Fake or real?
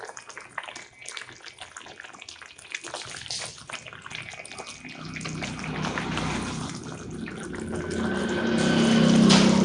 real